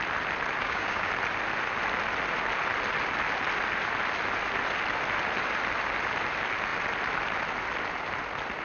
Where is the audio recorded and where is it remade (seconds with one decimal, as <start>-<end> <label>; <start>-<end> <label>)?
0.0-0.6 recorded; 0.6-1.1 remade; 1.1-8.6 recorded